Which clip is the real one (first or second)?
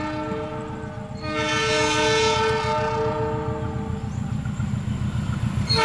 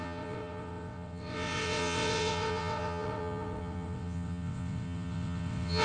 first